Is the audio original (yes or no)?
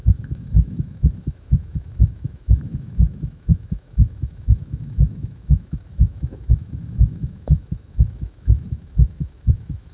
no